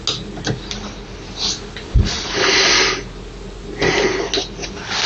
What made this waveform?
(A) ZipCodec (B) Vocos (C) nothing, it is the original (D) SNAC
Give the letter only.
C